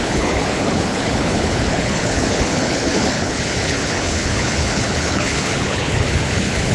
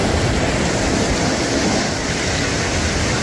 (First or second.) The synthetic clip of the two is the first